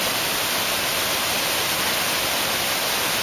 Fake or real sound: real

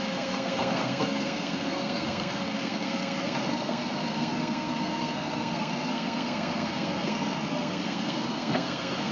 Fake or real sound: fake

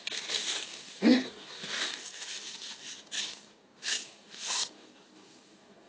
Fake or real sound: fake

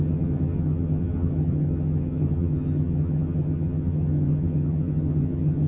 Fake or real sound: fake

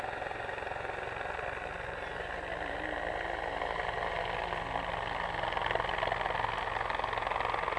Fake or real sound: real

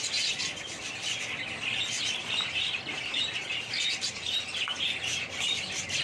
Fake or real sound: real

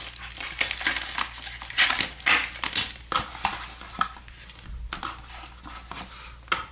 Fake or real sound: real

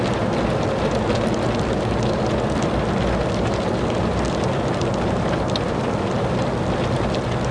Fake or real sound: real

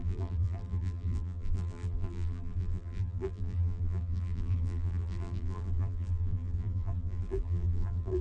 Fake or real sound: fake